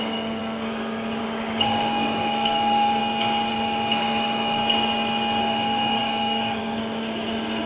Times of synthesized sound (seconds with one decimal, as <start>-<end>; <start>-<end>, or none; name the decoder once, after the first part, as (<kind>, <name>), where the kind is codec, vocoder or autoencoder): 0.0-3.0 (codec, DAC); 3.5-4.6; 5.4-7.7